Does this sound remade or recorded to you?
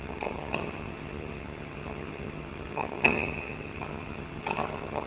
remade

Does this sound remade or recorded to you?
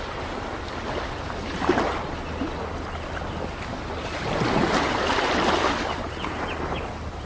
recorded